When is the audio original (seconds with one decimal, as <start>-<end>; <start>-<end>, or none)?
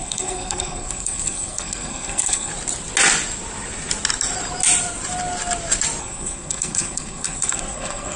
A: 2.5-6.0